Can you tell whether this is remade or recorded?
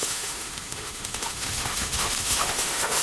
remade